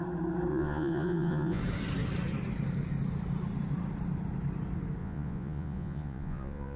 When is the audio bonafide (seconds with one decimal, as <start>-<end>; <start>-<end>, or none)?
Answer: 0.0-0.5; 1.6-5.0